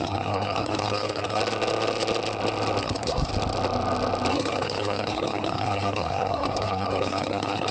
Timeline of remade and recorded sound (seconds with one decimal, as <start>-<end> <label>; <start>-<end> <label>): 0.0-1.4 remade; 1.4-2.8 recorded; 2.8-3.3 remade; 3.3-4.3 recorded; 4.3-7.7 remade